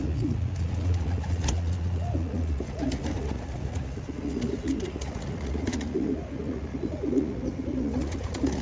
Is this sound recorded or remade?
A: remade